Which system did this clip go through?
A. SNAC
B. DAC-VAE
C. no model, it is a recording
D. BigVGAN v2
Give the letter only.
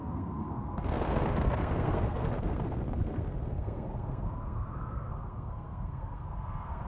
A